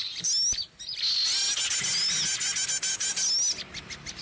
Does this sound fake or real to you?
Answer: real